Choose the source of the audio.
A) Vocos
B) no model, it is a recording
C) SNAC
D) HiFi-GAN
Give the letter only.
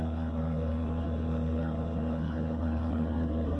C